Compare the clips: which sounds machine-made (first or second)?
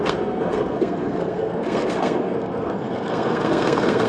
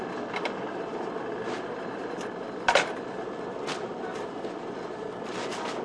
first